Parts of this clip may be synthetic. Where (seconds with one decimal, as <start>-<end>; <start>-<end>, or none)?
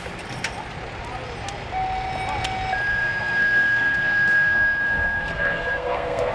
2.9-6.3